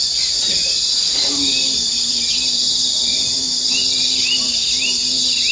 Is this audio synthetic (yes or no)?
no